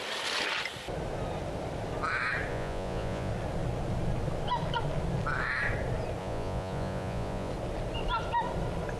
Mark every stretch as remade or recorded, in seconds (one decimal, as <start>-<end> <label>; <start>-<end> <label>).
0.0-2.5 recorded; 2.5-3.3 remade; 3.3-6.2 recorded; 6.2-7.5 remade; 7.5-9.0 recorded